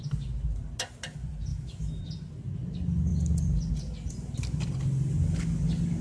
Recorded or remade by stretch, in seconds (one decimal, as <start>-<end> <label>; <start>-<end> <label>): 0.0-1.5 recorded; 1.5-2.0 remade; 2.0-6.0 recorded